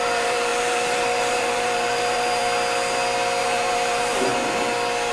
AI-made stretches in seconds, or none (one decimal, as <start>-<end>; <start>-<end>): 0.0-2.4; 3.4-4.3